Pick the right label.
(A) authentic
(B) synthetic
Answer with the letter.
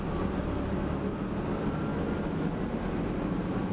A